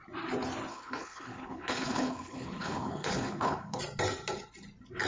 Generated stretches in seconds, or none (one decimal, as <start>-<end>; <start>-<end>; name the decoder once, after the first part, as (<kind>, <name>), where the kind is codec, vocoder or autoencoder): 0.7-3.8 (codec, HILCodec)